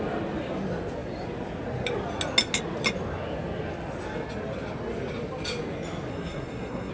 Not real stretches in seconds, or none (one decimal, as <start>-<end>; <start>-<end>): 6.1-6.9